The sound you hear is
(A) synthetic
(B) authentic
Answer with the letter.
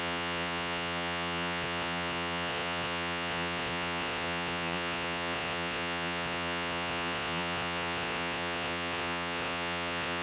A